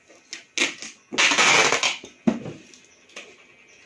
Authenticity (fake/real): real